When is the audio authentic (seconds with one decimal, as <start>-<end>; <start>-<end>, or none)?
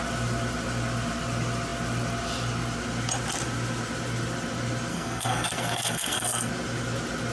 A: 0.0-4.9; 6.5-7.3